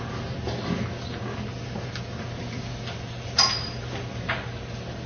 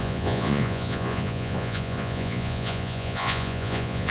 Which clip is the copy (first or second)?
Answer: second